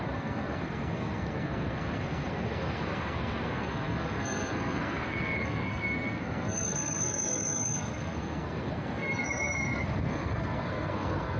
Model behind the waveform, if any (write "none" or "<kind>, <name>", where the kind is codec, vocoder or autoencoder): codec, SNAC